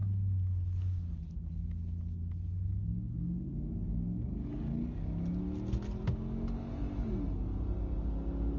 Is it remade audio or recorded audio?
recorded